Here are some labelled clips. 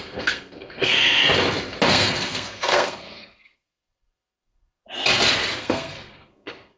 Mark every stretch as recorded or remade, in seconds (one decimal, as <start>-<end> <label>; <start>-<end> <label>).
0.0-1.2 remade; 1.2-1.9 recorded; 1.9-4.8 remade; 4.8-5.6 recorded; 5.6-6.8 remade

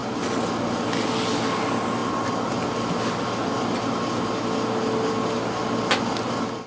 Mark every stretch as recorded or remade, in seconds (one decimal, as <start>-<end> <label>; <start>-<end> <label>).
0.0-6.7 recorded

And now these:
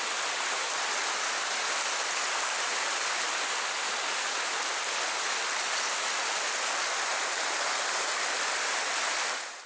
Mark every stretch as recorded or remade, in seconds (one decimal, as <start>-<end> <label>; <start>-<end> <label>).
0.0-9.7 recorded

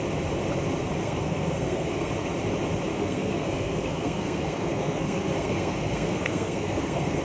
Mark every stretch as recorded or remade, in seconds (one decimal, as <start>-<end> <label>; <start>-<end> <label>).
0.0-1.0 recorded; 1.0-2.1 remade; 2.1-2.9 recorded; 2.9-7.2 remade